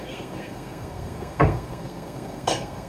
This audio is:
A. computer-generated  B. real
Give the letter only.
A